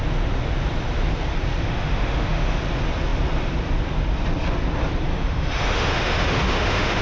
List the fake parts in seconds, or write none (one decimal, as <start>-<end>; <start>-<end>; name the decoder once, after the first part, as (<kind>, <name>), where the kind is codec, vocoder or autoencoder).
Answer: 1.6-2.6 (autoencoder, DAC-VAE); 5.1-7.0